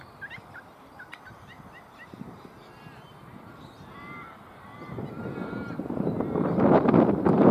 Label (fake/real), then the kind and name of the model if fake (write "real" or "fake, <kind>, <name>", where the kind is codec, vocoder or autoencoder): real